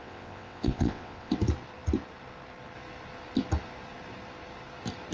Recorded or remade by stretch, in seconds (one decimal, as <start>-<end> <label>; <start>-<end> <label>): 0.0-1.3 remade; 1.3-5.1 recorded